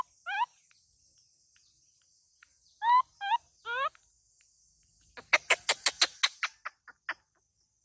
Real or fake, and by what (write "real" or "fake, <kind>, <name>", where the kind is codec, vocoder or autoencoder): real